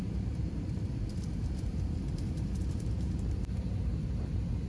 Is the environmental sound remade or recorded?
remade